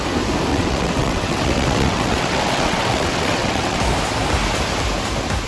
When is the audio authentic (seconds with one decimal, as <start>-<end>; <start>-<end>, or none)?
0.0-0.5; 3.8-5.5